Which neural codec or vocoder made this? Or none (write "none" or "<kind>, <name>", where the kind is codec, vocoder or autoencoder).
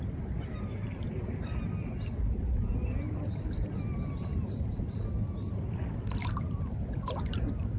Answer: none